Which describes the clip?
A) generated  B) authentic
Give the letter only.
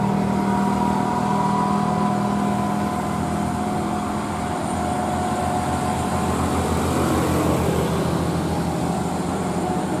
B